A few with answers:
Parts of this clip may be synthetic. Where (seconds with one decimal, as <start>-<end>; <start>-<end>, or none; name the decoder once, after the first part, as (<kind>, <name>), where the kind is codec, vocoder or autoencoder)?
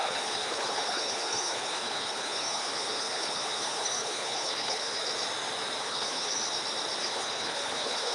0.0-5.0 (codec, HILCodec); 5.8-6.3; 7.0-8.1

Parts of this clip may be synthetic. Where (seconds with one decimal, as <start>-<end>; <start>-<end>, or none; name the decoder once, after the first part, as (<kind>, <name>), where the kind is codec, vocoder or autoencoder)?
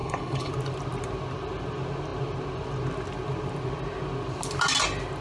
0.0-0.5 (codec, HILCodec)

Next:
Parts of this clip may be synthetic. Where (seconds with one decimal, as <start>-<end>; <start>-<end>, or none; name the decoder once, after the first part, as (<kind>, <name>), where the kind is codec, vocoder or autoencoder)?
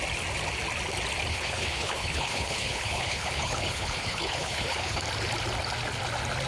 1.3-5.0 (codec, HILCodec)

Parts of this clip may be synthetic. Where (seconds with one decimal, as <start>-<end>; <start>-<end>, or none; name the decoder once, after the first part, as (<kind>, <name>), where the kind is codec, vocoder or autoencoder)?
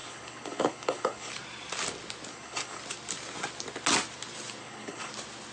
0.0-1.3 (codec, HILCodec); 2.3-2.8; 4.6-5.1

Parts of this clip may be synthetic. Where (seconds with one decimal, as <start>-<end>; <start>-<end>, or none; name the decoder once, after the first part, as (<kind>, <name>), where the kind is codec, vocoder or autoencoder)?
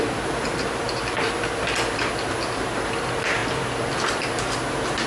none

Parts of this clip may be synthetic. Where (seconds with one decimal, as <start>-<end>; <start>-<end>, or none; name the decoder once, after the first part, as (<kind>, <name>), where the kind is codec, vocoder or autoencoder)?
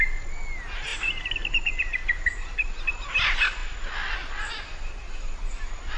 none